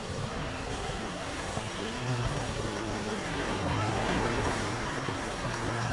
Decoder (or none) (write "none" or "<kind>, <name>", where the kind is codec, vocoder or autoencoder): codec, SNAC